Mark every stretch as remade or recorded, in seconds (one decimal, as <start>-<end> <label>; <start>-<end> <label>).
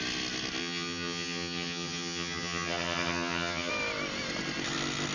0.0-0.6 recorded; 0.6-3.7 remade; 3.7-5.1 recorded